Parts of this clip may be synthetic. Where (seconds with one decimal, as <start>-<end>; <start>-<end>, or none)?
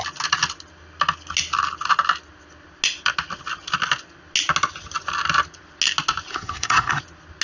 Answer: 6.3-7.0